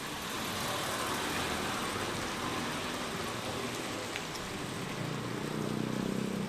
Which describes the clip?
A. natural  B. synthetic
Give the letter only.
A